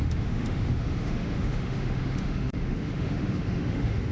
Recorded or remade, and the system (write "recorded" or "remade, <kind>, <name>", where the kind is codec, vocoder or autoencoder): remade, autoencoder, DAC-VAE